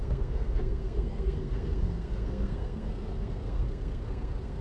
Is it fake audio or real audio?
fake